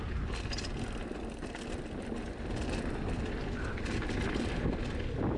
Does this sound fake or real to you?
real